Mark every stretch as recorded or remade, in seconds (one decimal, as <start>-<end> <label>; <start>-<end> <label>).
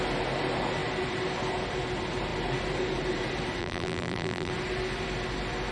0.0-3.6 recorded; 3.6-4.5 remade; 4.5-5.7 recorded